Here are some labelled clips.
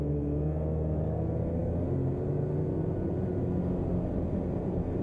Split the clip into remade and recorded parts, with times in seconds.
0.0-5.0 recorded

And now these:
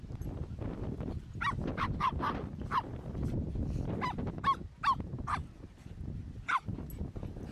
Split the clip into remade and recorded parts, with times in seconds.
0.0-7.5 recorded